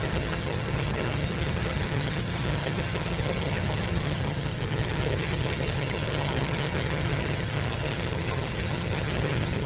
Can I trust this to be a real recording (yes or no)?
no